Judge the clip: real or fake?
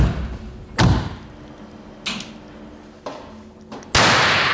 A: real